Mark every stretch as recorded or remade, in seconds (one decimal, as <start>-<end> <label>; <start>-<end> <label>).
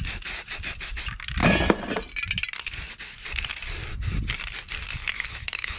0.0-5.1 recorded; 5.1-5.8 remade